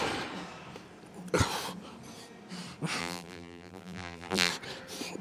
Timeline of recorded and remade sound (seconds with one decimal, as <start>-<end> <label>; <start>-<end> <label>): 0.0-3.0 recorded; 3.0-4.5 remade; 4.5-5.2 recorded